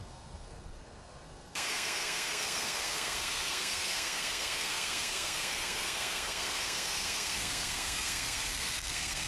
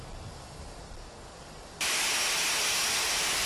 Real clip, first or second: second